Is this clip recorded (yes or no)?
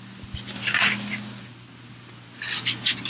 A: yes